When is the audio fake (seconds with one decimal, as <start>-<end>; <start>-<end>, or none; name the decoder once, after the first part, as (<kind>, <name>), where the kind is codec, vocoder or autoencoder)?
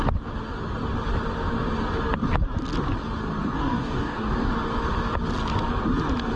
3.4-4.5 (codec, DAC)